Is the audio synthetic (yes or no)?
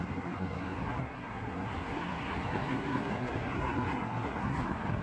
yes